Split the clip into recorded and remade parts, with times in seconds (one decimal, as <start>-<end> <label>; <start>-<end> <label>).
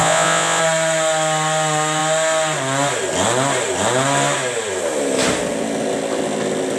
0.0-0.6 remade; 0.6-6.8 recorded